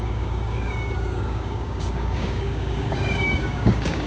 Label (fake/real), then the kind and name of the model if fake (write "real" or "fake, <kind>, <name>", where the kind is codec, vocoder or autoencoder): fake, codec, DAC